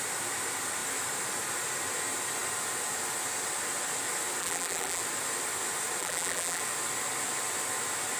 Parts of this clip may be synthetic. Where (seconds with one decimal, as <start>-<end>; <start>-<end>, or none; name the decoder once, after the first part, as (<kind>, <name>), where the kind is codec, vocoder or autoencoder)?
4.4-5.0 (vocoder, BigVGAN v2); 6.0-6.6

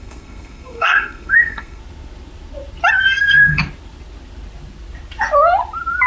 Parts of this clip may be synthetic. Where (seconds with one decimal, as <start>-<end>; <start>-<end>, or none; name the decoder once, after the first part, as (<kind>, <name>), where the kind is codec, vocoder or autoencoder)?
0.0-1.8 (codec, SNAC); 2.9-3.6

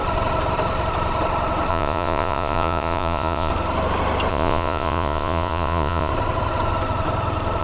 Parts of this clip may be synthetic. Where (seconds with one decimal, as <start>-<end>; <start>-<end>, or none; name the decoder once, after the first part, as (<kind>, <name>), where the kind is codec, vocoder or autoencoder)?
1.7-3.5 (vocoder, Vocos); 4.3-6.1